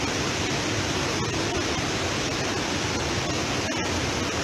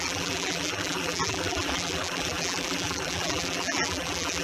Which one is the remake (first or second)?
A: second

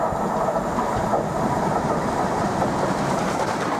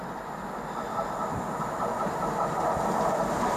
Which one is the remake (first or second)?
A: first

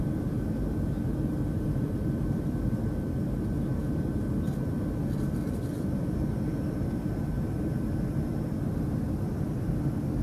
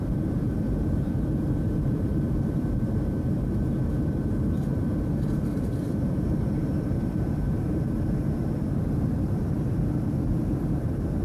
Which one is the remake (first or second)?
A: second